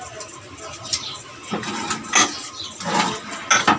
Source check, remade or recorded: recorded